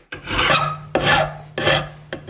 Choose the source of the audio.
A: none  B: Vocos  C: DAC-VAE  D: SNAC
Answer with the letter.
A